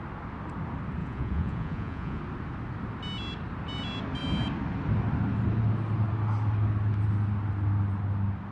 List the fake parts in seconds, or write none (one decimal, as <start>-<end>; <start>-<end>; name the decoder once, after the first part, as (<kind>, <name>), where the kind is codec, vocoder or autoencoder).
1.0-2.2 (vocoder, Vocos)